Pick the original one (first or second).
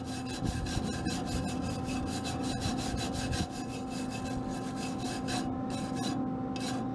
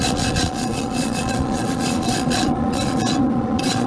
first